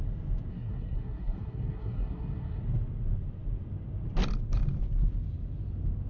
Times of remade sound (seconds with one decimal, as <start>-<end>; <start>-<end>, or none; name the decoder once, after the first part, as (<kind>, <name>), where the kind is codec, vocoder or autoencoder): 0.5-2.6 (codec, SNAC)